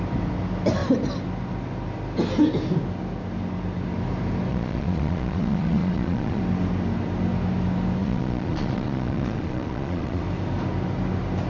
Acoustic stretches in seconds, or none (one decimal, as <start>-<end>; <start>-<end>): 0.0-4.5; 6.4-8.0; 10.2-11.5